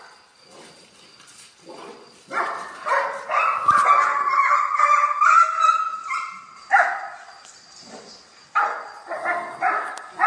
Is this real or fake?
real